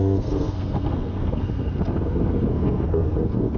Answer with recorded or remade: remade